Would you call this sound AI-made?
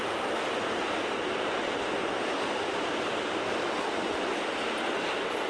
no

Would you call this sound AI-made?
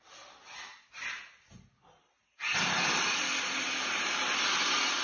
no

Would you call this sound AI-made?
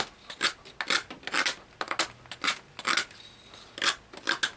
no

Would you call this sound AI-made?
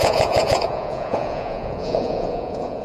yes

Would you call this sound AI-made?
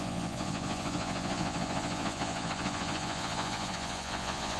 yes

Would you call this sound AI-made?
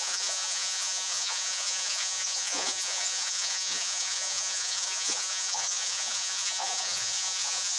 yes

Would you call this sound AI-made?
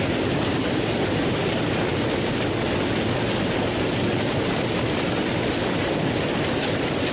no